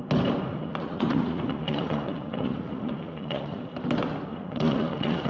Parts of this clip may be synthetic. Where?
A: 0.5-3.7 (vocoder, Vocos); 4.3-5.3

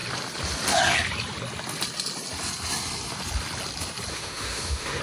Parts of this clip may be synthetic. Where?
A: 4.1-5.0 (autoencoder, DAC-VAE)

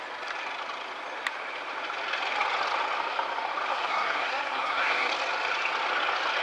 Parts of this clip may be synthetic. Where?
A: 3.7-5.1 (codec, SNAC)

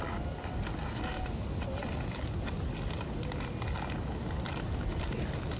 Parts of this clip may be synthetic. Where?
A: none